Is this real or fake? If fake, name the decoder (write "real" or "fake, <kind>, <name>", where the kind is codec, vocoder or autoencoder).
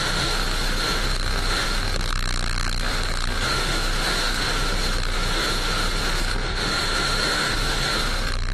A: fake, autoencoder, DAC-VAE